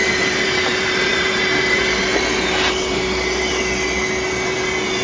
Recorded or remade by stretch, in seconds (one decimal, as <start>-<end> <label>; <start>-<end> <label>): 0.0-1.3 remade; 1.3-5.0 recorded